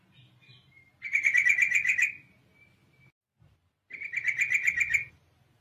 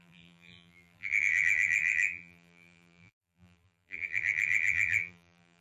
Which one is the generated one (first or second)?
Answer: second